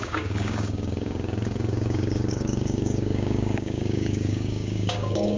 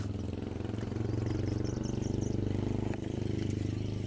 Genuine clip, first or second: second